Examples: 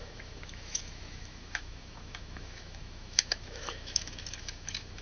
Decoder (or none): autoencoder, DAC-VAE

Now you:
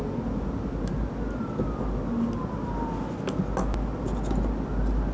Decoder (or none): none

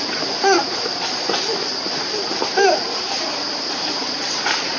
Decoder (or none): vocoder, BigVGAN v2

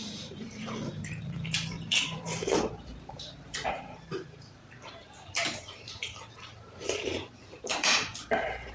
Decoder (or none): vocoder, BigVGAN v2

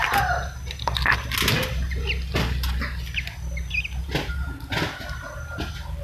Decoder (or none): none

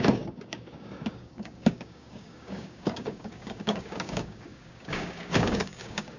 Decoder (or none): codec, DAC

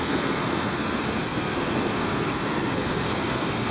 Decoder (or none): codec, SNAC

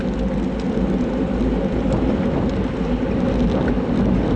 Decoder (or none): none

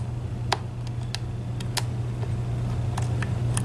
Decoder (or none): none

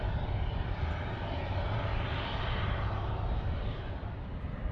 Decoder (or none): none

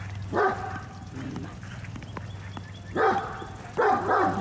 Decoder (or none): none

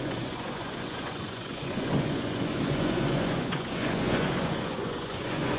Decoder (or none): vocoder, Vocos